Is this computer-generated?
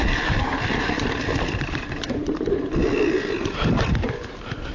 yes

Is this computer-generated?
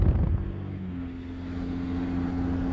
no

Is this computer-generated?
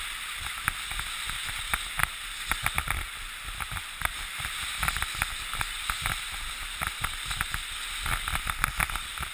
no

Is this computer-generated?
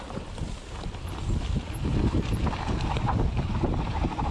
yes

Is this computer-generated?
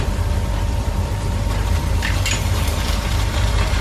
yes